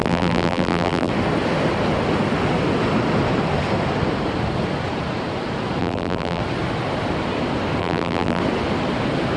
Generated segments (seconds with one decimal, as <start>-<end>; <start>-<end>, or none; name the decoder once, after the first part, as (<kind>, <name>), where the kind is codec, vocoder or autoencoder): 0.0-1.1 (vocoder, BigVGAN v2); 5.8-6.4; 7.8-8.4